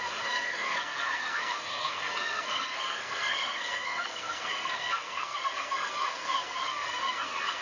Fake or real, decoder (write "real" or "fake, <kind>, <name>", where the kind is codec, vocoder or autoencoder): fake, codec, SNAC